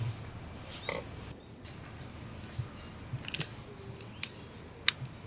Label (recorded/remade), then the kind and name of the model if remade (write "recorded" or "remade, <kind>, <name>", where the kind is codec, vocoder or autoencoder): recorded